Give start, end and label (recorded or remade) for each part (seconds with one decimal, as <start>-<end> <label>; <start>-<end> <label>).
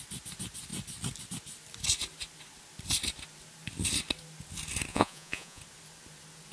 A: 0.0-4.9 recorded; 4.9-5.6 remade; 5.6-6.5 recorded